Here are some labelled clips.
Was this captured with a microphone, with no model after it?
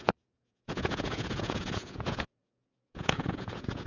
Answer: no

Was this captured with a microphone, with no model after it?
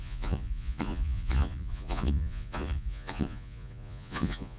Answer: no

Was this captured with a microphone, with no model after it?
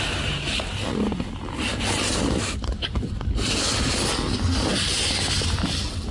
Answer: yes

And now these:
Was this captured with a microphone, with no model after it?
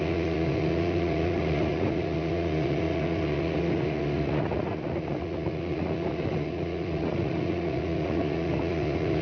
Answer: no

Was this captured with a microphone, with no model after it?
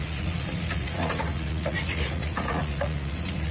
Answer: no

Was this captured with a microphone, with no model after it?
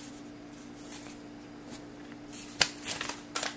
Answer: yes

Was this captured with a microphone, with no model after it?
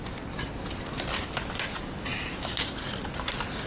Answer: yes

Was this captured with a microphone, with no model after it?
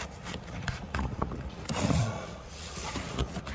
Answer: no